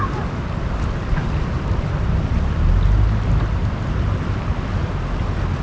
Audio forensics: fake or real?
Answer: real